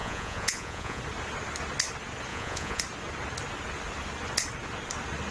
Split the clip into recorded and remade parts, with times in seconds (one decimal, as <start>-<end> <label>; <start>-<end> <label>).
0.0-1.0 remade; 1.0-2.3 recorded; 2.3-2.8 remade; 2.8-5.3 recorded